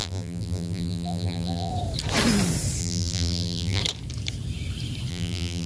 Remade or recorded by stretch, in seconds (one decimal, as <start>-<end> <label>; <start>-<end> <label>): 0.0-1.7 remade; 1.7-2.8 recorded; 2.8-3.8 remade; 3.8-5.1 recorded; 5.1-5.7 remade